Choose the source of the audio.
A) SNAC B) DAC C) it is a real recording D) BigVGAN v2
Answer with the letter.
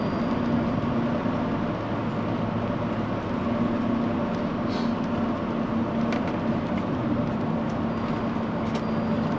C